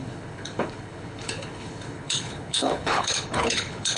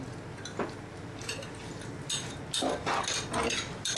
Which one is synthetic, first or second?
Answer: first